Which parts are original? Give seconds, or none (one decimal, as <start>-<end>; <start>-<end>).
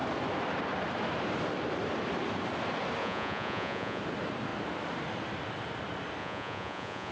0.0-3.0; 4.0-6.2